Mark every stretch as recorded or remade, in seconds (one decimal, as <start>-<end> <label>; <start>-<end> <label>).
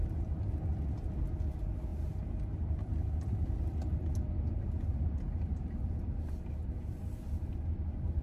0.0-8.2 recorded